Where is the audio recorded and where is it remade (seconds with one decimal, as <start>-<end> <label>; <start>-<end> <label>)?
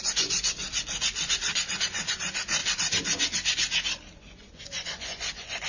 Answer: 0.0-2.6 remade; 2.6-4.2 recorded; 4.2-5.7 remade